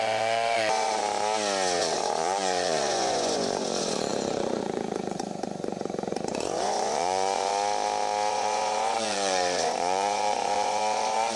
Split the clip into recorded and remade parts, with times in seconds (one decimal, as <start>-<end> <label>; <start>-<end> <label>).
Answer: 0.0-1.0 remade; 1.0-1.8 recorded; 1.8-7.5 remade; 7.5-8.3 recorded; 8.3-11.4 remade